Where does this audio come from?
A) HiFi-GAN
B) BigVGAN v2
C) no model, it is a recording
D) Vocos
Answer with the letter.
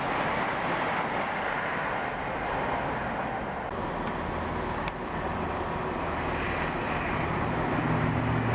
C